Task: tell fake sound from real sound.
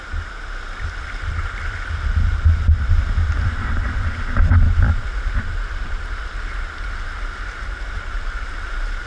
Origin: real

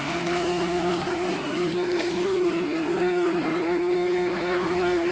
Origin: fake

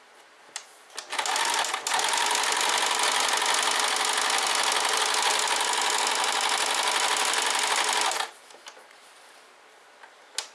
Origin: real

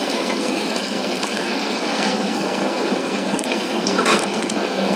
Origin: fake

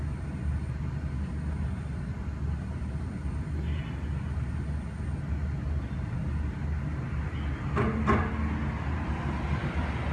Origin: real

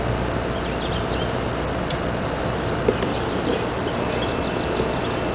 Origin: real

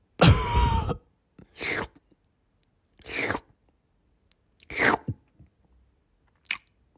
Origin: real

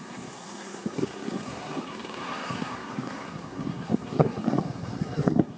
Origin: fake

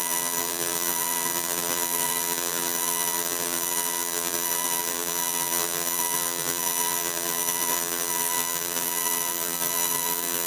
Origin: fake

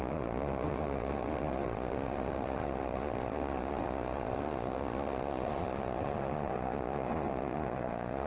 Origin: fake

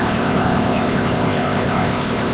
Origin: fake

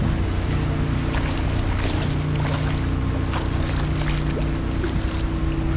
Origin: real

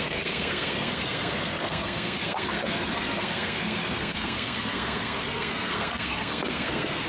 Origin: fake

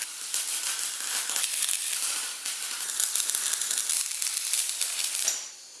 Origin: fake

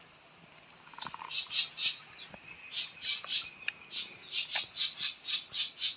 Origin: real